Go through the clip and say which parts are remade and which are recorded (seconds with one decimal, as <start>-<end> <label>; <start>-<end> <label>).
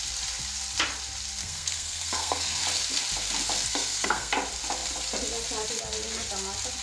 0.0-1.4 recorded; 1.4-2.6 remade; 2.6-3.7 recorded; 3.7-4.3 remade; 4.3-6.8 recorded